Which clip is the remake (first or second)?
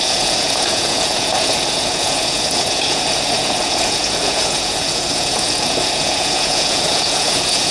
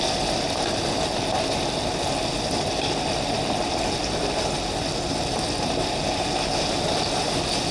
first